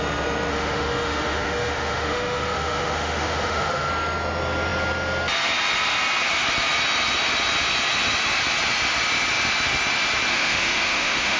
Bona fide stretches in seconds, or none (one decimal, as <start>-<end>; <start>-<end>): 0.0-0.5; 3.9-10.3